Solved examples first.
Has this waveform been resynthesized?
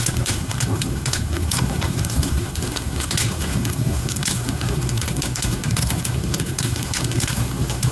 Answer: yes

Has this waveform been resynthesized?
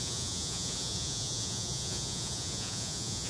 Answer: yes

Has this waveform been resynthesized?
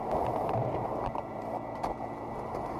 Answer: yes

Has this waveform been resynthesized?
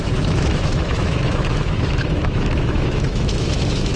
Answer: yes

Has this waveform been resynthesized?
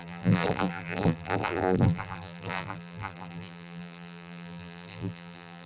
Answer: yes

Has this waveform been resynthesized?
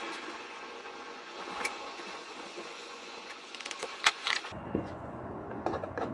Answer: yes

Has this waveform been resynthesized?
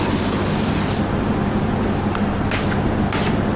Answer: no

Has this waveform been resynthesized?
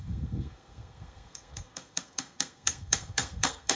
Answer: yes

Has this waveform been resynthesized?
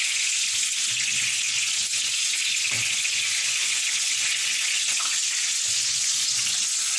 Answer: yes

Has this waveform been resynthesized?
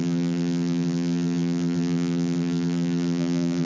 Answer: yes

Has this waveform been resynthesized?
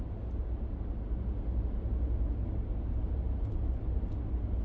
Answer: no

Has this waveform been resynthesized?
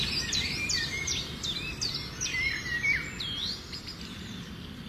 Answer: no